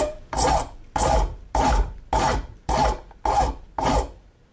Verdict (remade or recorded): recorded